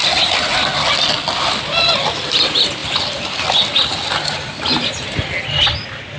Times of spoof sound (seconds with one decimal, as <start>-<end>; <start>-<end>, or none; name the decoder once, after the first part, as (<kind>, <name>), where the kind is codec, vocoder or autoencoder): none